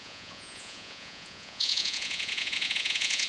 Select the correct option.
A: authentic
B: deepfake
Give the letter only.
B